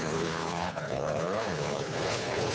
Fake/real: fake